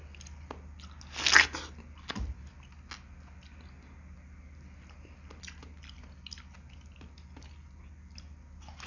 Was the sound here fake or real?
real